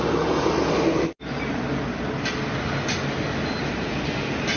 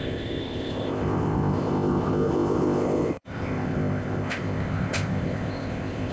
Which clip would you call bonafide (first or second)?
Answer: first